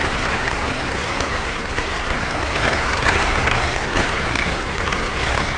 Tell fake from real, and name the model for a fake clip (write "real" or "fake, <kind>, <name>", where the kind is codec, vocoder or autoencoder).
fake, codec, SNAC